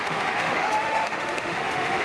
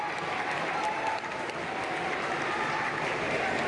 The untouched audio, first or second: second